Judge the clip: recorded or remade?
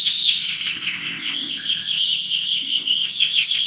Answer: remade